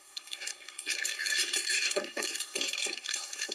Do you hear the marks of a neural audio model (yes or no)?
yes